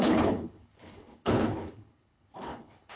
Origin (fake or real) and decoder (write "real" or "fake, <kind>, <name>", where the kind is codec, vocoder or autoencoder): fake, codec, HILCodec